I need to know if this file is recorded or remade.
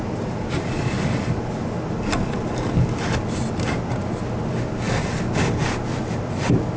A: recorded